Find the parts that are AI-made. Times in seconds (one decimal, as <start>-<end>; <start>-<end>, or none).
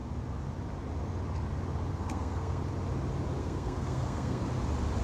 1.9-2.6; 3.4-4.4